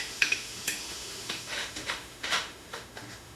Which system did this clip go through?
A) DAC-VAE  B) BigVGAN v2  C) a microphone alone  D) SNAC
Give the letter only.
A